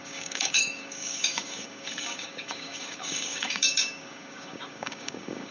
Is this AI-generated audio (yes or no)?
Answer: yes